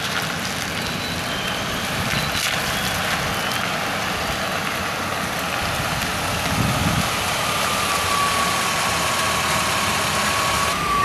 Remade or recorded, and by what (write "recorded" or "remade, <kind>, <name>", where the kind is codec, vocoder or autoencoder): recorded